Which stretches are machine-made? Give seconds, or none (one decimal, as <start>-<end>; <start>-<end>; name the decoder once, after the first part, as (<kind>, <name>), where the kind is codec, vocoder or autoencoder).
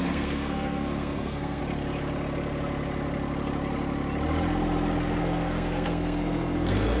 0.0-1.6 (codec, SNAC); 5.2-7.0